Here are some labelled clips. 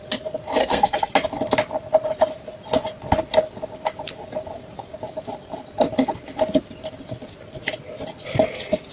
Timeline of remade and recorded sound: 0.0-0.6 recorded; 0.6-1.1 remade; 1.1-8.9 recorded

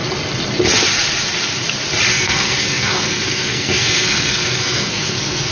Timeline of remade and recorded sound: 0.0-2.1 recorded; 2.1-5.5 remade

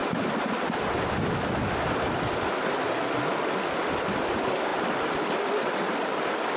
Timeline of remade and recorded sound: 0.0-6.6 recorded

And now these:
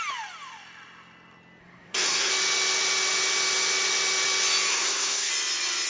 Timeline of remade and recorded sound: 0.0-1.6 recorded; 1.6-2.3 remade; 2.3-4.7 recorded; 4.7-5.3 remade; 5.3-5.9 recorded

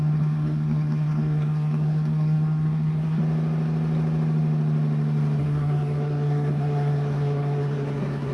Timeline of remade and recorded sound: 0.0-3.2 remade; 3.2-5.4 recorded; 5.4-8.3 remade

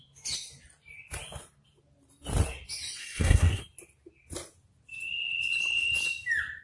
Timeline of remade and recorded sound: 0.0-3.0 recorded; 3.0-3.6 remade; 3.6-6.6 recorded